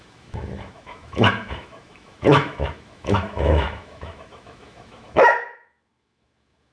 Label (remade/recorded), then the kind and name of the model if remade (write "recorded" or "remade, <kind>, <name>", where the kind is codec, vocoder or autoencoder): remade, autoencoder, DAC-VAE